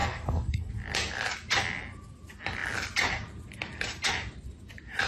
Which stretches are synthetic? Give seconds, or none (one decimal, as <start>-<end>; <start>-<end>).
0.0-0.7